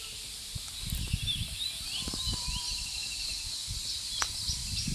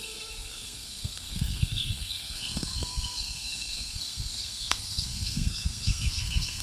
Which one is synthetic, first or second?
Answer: second